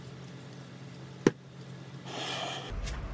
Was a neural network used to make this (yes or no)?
no